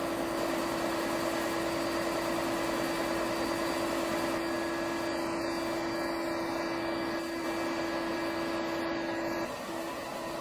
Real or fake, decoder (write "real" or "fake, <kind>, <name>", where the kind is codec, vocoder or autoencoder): real